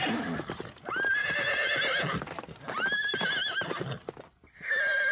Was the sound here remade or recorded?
recorded